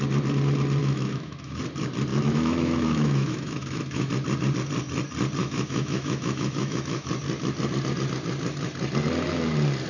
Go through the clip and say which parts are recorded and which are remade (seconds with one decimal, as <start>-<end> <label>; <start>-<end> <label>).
0.0-0.8 recorded; 0.8-1.6 remade; 1.6-2.1 recorded; 2.1-4.1 remade; 4.1-5.4 recorded; 5.4-7.1 remade; 7.1-9.9 recorded